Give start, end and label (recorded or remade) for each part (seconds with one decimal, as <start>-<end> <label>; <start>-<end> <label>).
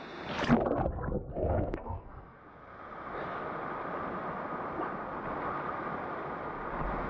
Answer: 0.0-1.3 recorded; 1.3-2.4 remade; 2.4-7.1 recorded